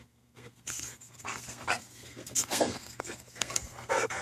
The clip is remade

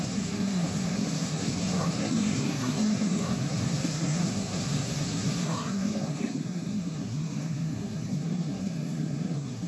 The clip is remade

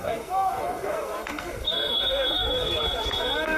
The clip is remade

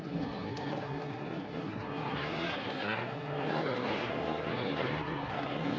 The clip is remade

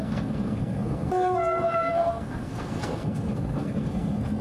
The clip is remade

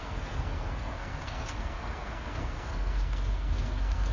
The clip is remade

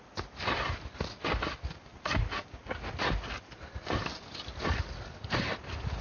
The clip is recorded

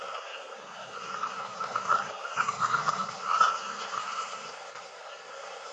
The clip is remade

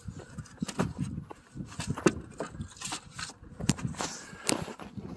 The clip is recorded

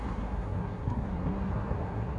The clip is remade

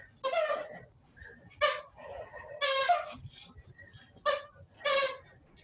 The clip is recorded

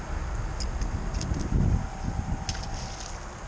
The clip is recorded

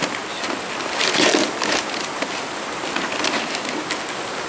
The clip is recorded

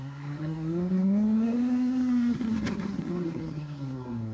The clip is remade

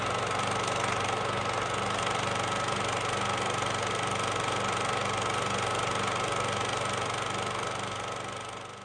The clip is recorded